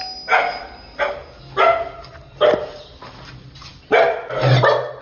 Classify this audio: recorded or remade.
recorded